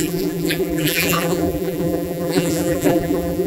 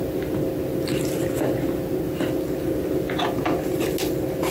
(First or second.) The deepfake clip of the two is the first